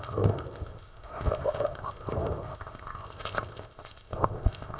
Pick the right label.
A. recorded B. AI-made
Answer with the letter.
B